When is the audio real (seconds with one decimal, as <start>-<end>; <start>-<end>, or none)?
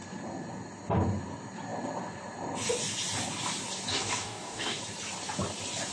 0.0-3.9; 4.8-5.9